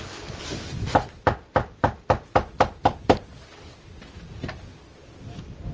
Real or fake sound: fake